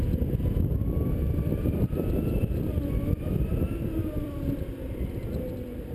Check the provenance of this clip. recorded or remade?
remade